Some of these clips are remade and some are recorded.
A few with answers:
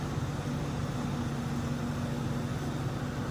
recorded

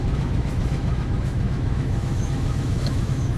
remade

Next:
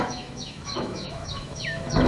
remade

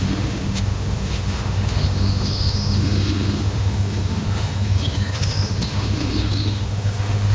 remade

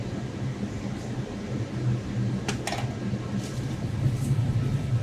recorded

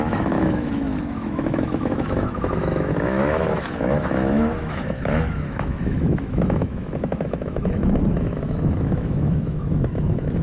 remade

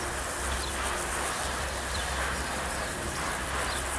recorded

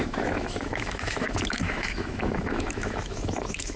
remade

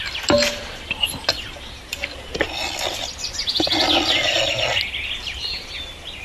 recorded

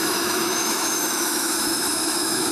remade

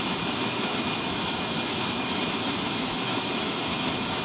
remade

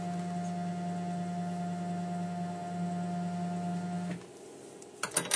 recorded